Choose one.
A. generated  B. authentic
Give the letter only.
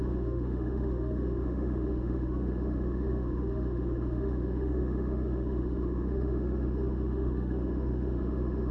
A